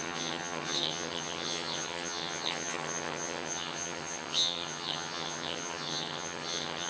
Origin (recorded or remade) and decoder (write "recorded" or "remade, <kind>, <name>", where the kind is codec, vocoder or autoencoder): remade, vocoder, HiFi-GAN